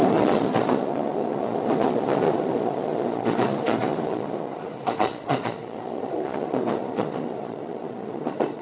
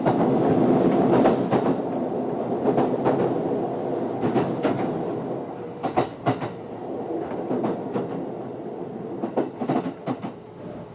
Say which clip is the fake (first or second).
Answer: first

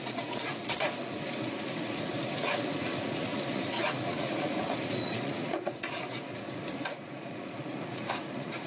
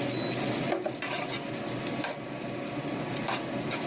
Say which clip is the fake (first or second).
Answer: first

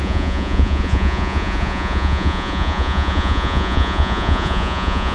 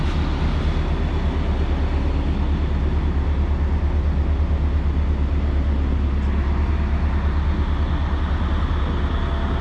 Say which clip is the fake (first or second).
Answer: first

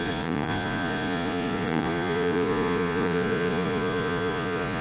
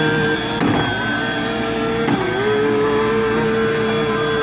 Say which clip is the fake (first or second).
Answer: first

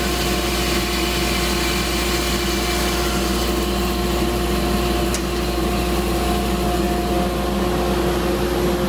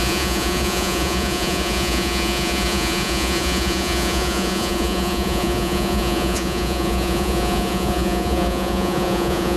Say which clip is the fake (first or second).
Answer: second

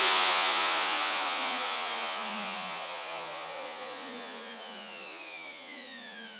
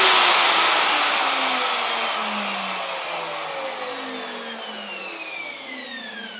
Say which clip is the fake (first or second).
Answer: first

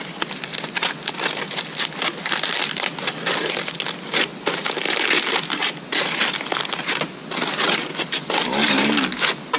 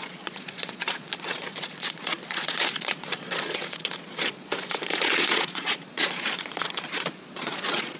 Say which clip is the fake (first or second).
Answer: second